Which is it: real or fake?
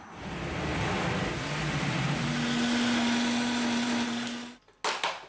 real